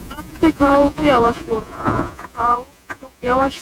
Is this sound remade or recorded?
remade